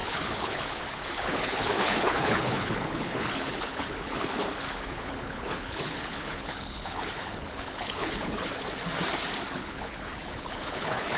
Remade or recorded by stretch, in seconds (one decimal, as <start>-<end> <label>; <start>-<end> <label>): 0.0-8.5 remade; 8.5-9.5 recorded; 9.5-11.2 remade